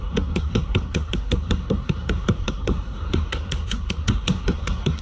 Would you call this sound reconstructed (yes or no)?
yes